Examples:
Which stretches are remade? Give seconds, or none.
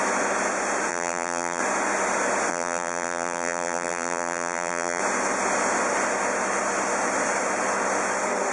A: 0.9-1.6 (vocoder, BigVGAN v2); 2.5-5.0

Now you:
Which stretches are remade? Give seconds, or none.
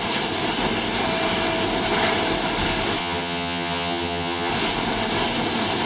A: 3.0-4.5 (vocoder, HiFi-GAN)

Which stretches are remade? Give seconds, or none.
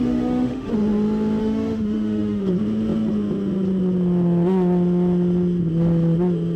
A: 0.0-0.7 (autoencoder, DAC-VAE); 1.4-2.5